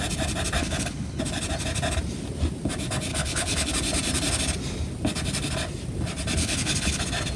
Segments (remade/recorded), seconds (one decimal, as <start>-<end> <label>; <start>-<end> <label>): 0.0-0.6 recorded; 0.6-1.2 remade; 1.2-3.1 recorded; 3.1-3.7 remade; 3.7-6.4 recorded; 6.4-7.0 remade; 7.0-7.4 recorded